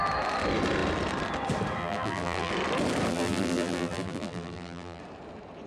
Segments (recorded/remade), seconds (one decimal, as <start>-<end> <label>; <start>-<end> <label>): 0.0-1.8 recorded; 1.8-2.5 remade; 2.5-3.1 recorded; 3.1-5.0 remade; 5.0-5.7 recorded